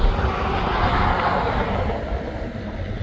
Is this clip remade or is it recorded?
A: recorded